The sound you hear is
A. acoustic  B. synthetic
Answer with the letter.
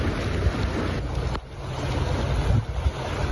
A